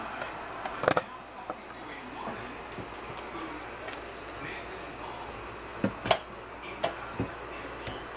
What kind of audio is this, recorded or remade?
recorded